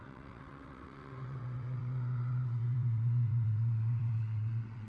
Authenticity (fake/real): fake